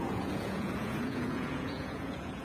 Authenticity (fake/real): fake